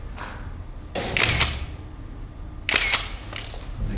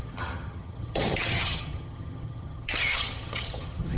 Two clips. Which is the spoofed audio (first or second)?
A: second